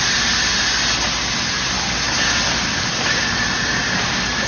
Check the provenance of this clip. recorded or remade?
recorded